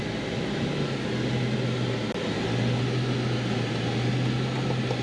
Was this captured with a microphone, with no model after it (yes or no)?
yes